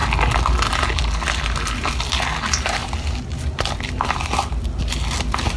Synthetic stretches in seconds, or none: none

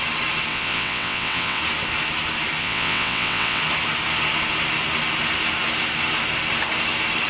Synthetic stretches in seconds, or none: 0.5-1.6 (vocoder, WaveNeXt); 2.6-3.6

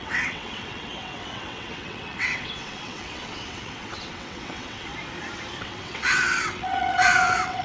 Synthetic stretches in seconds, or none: 0.0-4.9 (vocoder, WaveNeXt); 5.6-7.6

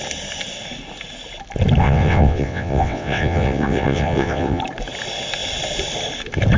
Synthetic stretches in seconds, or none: 1.8-4.6 (vocoder, WaveNeXt)

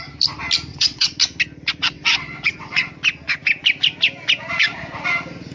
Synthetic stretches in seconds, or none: 0.7-1.2 (vocoder, WaveNeXt); 1.8-2.9